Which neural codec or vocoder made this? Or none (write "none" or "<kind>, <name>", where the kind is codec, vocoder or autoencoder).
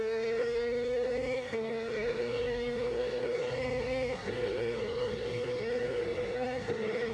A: codec, SNAC